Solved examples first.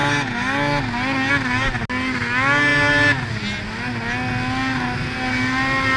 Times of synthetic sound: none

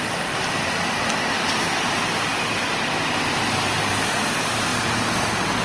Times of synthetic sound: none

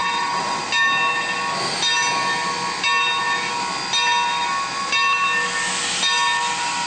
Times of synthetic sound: 0.0-0.6 (vocoder, WaveNeXt)

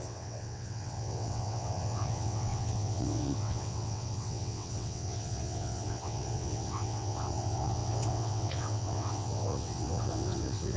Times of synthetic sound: 0.0-10.8 (vocoder, WaveNeXt)